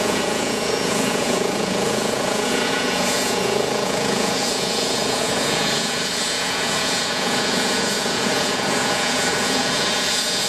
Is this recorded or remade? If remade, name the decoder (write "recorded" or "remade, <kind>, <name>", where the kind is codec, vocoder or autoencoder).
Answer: remade, vocoder, Vocos